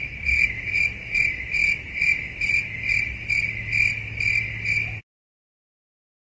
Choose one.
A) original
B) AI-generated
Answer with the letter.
A